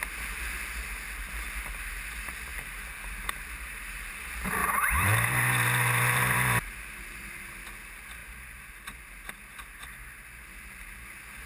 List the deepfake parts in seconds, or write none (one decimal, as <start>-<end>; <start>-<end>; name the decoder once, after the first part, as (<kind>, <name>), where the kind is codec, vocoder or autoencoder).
4.6-7.4 (vocoder, BigVGAN v2)